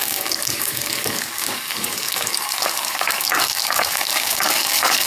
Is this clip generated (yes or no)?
yes